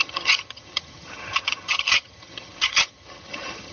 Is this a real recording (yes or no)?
no